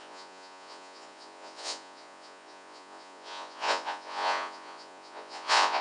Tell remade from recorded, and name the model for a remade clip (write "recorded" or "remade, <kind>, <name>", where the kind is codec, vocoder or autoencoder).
remade, vocoder, Vocos